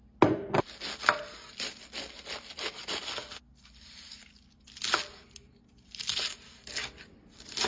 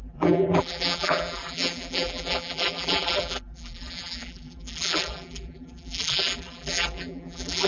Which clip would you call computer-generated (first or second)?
second